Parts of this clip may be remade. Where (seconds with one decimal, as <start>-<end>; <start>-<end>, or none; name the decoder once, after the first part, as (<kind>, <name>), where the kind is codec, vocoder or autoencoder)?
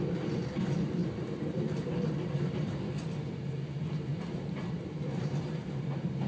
1.0-3.1 (vocoder, BigVGAN v2); 4.1-5.7